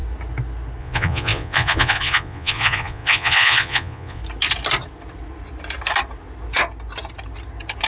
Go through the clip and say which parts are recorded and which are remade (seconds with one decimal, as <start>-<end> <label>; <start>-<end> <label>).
0.0-0.8 recorded; 0.8-4.2 remade; 4.2-7.9 recorded